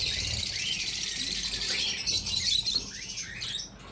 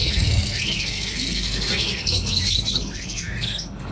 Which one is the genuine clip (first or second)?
first